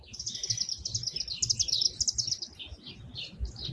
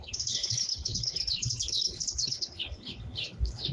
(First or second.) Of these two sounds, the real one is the first